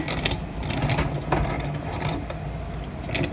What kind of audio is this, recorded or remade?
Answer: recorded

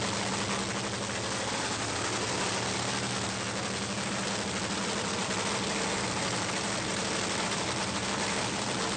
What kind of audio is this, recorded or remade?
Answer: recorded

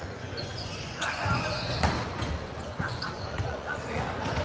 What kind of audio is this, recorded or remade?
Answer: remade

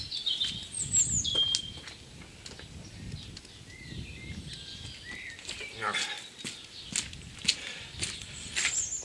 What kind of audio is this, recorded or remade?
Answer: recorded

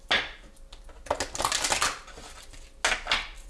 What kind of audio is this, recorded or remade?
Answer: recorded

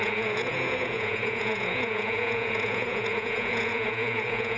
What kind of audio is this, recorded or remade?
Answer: remade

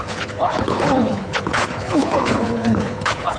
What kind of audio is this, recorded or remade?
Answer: remade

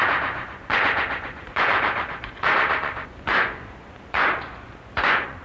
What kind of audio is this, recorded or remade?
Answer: remade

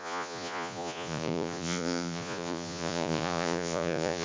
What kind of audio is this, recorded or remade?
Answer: remade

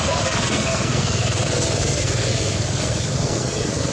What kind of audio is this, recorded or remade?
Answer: remade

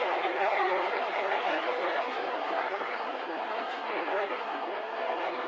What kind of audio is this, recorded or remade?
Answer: remade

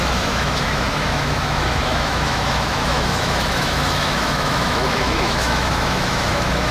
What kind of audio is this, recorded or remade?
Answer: remade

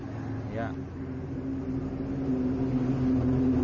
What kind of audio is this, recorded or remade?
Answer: recorded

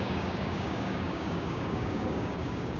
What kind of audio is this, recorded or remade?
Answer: remade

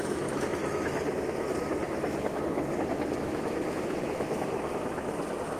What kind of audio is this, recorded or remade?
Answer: remade